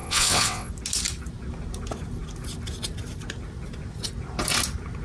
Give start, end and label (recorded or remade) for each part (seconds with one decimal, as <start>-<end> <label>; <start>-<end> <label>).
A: 0.0-0.7 remade; 0.7-5.0 recorded